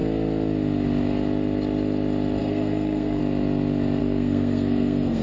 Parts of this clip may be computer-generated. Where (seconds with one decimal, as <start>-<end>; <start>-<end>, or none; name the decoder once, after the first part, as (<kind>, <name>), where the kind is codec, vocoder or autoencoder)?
2.4-3.2 (codec, SNAC); 4.0-5.2